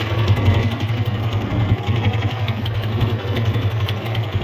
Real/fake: fake